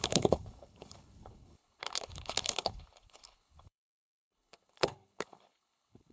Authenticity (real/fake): fake